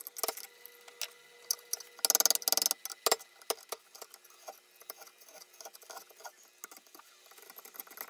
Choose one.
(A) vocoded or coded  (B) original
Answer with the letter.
B